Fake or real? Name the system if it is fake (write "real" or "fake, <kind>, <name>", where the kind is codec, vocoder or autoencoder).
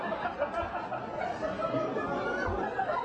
real